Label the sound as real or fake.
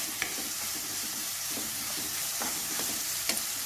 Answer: fake